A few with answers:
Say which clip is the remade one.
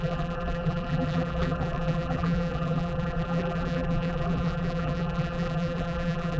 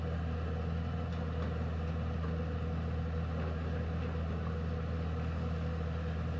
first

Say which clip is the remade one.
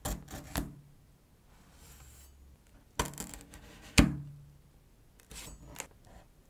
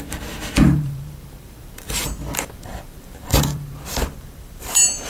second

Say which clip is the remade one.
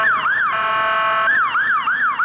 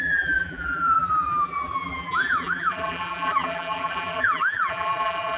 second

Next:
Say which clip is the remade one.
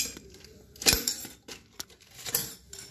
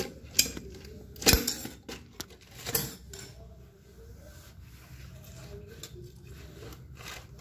first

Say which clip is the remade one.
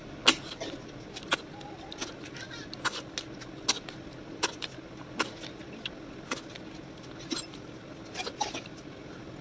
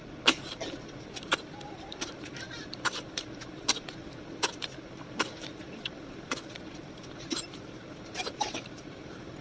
second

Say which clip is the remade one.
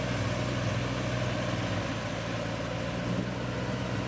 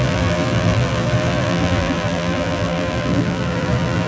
second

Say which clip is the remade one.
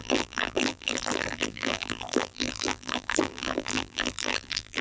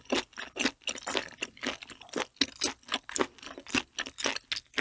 first